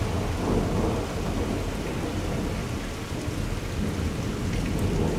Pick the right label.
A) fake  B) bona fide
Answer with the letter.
B